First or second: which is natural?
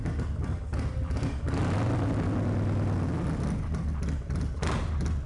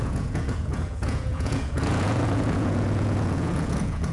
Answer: first